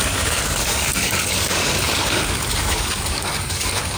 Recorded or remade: remade